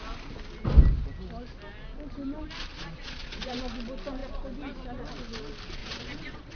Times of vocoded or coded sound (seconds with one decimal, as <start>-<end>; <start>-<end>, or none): 2.7-3.6; 5.8-6.6